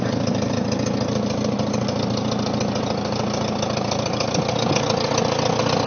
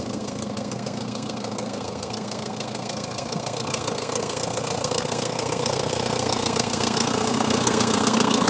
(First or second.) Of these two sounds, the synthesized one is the second